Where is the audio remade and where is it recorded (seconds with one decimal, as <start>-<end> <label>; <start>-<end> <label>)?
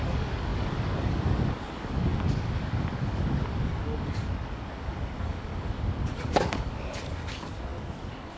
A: 0.0-8.4 remade